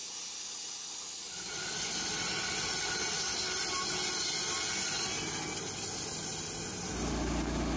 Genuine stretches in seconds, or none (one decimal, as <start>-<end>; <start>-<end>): 0.0-7.8